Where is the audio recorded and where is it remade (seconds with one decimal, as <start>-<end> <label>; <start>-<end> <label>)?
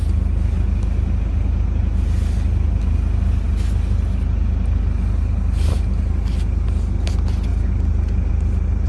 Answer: 0.0-8.9 recorded